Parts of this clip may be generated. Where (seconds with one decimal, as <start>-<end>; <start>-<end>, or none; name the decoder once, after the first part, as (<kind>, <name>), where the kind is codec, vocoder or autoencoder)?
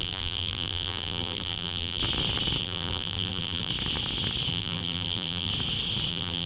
0.0-2.0 (vocoder, BigVGAN v2); 2.6-3.7; 4.5-5.5; 6.1-6.5